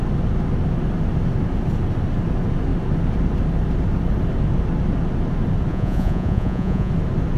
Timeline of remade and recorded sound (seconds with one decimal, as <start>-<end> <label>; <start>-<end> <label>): 0.0-5.7 recorded; 5.7-6.9 remade; 6.9-7.4 recorded